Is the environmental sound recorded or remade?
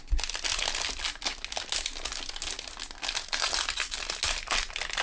recorded